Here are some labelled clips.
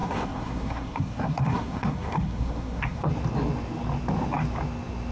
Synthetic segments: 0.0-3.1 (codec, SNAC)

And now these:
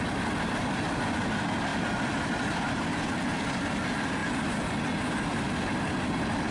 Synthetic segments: none

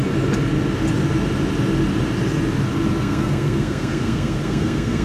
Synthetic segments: 3.0-5.0 (codec, SNAC)

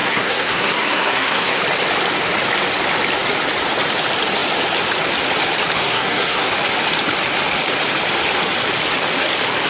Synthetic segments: 0.0-1.6 (codec, SNAC); 5.8-6.5